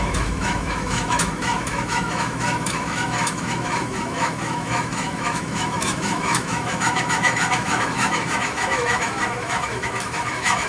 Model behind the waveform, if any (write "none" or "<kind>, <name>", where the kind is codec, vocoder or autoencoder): autoencoder, DAC-VAE